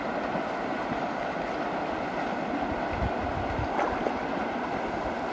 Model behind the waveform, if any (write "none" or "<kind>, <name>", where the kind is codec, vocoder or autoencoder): none